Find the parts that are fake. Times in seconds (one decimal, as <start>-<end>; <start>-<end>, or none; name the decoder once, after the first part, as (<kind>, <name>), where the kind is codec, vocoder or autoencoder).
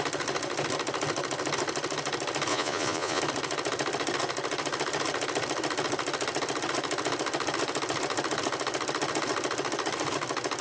2.5-3.2 (vocoder, Vocos)